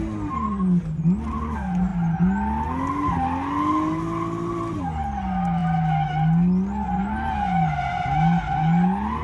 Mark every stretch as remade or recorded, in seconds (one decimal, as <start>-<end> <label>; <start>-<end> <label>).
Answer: 0.0-9.2 recorded